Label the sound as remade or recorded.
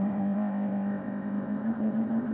remade